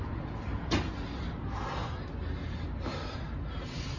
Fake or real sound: real